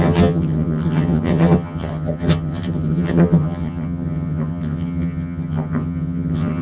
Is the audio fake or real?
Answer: fake